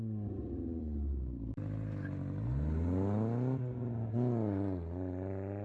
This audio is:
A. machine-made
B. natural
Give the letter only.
B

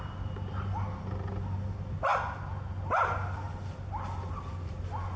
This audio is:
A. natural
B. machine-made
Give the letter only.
A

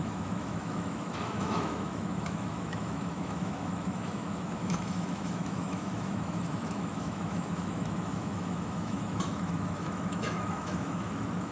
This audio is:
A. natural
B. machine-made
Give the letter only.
B